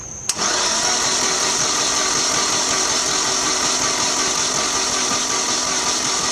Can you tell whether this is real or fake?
real